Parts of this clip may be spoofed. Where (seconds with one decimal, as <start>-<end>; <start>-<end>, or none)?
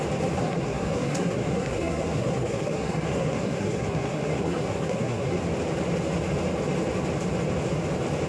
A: 0.4-5.4